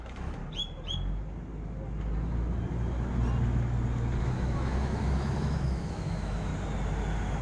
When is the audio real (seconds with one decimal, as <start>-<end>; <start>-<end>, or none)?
0.4-4.2; 6.5-7.4